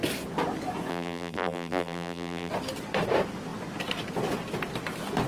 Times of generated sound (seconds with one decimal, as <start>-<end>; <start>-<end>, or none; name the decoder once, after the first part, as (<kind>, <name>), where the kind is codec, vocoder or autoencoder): 0.9-2.5 (vocoder, BigVGAN v2)